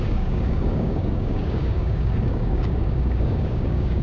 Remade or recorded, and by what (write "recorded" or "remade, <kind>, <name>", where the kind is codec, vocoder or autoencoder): remade, codec, DAC